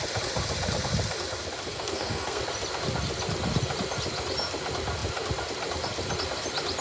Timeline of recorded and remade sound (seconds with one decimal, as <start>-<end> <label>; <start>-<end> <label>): 0.0-1.7 recorded; 1.7-2.4 remade; 2.4-6.8 recorded